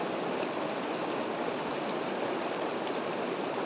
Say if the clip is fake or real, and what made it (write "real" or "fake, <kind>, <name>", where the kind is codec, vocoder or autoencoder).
real